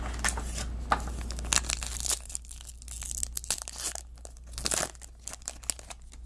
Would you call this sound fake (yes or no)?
no